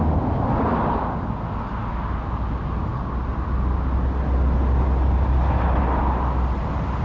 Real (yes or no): yes